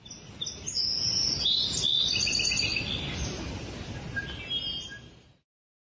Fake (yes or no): no